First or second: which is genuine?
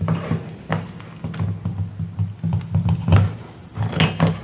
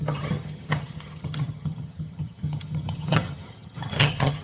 first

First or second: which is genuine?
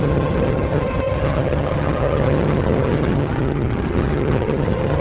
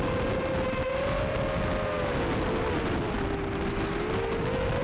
second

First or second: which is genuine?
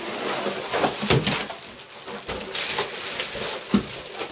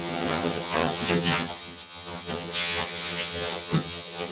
first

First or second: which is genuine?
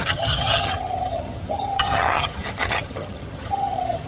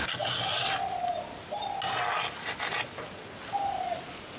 second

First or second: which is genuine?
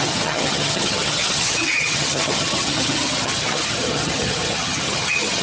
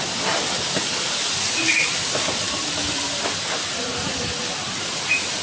second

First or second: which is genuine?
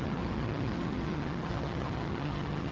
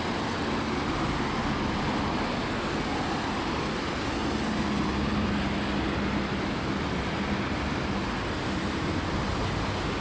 second